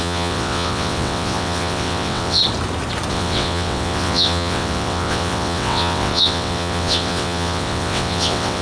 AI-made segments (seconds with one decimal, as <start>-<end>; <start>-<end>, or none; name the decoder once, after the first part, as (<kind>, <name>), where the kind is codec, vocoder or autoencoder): 0.0-2.4 (vocoder, WaveNeXt); 3.1-8.6